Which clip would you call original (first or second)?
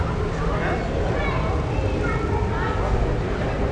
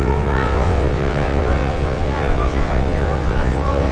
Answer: first